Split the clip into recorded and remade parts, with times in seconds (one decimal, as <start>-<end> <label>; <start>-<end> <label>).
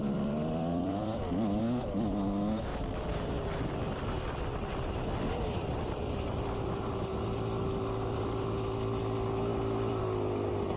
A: 0.0-1.6 remade; 1.6-2.7 recorded; 2.7-7.0 remade; 7.0-10.8 recorded